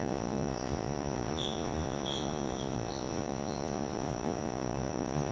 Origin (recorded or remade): remade